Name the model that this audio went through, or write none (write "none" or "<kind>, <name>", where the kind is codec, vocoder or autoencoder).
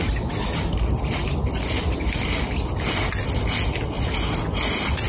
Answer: none